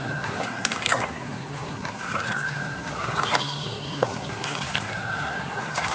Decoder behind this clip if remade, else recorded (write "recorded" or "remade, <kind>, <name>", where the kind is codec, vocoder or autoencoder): remade, codec, SNAC